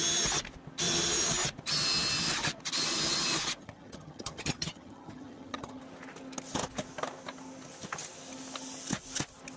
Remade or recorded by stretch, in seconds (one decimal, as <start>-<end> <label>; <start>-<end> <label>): 0.0-3.6 recorded; 3.6-5.8 remade; 5.8-9.6 recorded